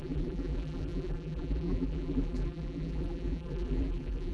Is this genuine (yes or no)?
no